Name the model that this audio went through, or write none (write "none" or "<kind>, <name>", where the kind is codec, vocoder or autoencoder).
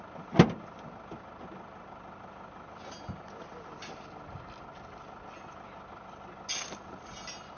none